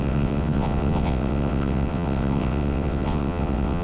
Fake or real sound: fake